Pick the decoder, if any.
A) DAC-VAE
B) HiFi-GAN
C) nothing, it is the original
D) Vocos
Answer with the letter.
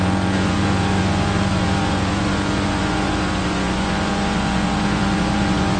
D